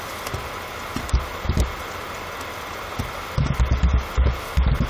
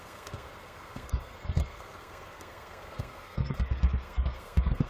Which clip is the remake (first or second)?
second